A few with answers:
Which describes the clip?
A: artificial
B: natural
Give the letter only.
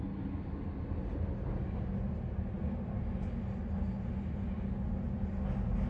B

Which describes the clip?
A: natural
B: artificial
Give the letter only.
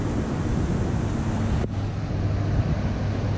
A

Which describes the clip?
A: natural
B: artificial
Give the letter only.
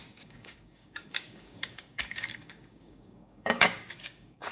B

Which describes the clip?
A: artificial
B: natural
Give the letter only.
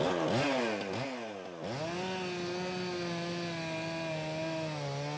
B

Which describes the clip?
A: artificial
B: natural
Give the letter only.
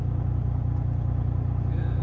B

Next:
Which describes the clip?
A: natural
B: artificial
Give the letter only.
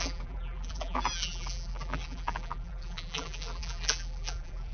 B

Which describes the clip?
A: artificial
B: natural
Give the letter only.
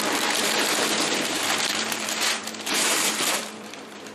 A